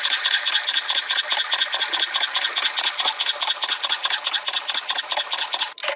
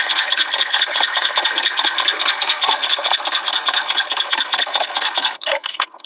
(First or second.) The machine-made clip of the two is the second